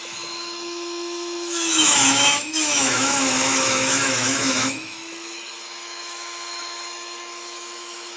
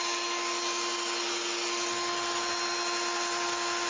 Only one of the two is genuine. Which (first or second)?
second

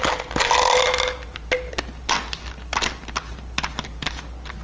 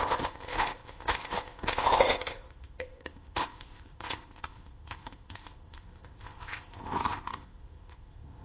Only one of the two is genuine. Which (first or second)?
first